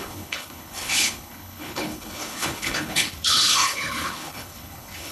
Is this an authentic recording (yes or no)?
no